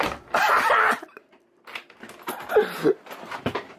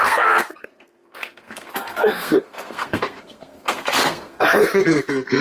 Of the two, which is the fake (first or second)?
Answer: second